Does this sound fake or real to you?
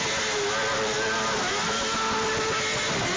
real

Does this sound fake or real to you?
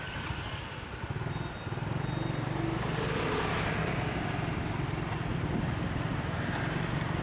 real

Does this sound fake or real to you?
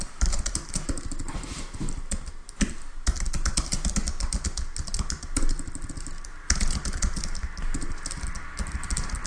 real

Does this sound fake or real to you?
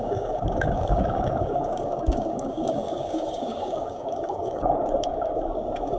fake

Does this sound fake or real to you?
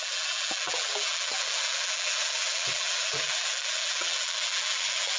fake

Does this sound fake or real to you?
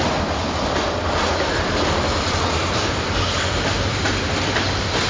real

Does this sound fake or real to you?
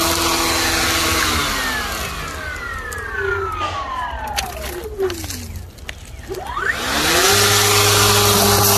real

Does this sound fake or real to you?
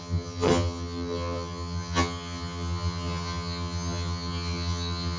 fake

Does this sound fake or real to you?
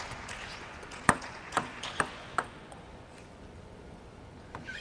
fake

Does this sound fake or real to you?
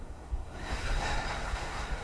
fake